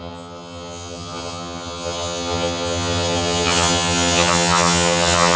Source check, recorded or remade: remade